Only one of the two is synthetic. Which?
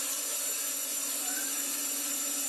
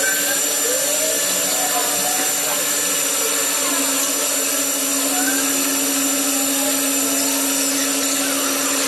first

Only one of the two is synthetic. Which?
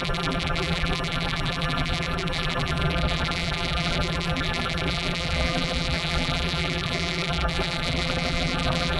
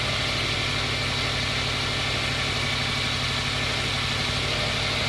first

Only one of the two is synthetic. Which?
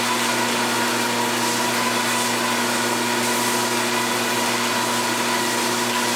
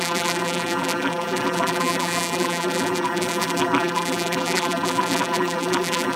second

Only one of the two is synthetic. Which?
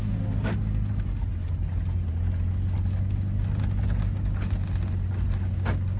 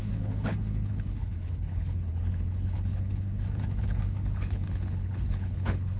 second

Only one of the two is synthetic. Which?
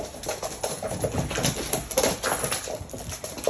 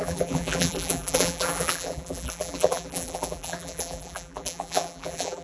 second